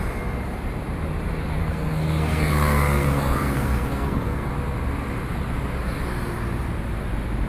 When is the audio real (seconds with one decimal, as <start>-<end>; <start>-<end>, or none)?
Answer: 0.0-1.6; 4.5-7.5